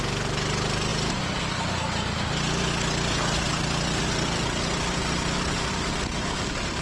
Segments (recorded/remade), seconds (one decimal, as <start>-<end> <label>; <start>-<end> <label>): 0.0-6.8 recorded